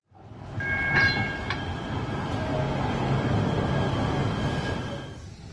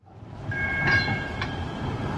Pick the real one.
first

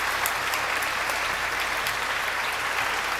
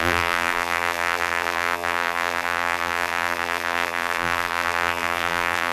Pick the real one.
first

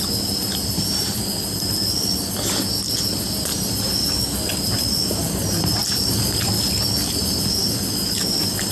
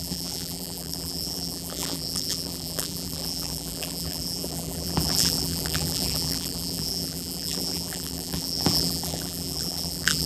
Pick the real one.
first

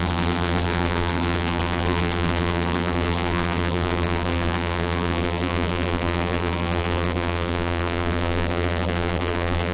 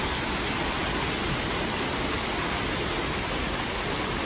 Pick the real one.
second